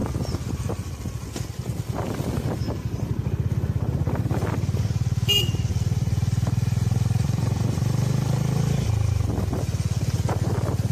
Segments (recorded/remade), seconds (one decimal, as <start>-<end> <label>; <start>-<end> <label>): 0.0-5.7 recorded; 5.7-9.1 remade; 9.1-10.9 recorded